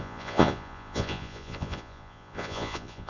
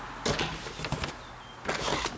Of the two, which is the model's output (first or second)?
first